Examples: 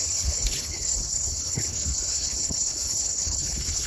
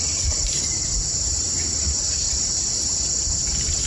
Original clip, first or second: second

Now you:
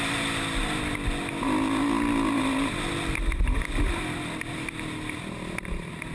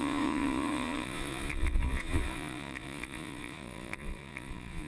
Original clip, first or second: first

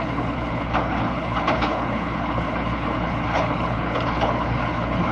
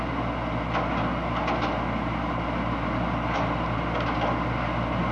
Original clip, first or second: second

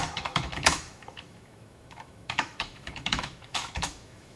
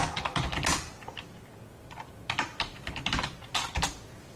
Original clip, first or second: second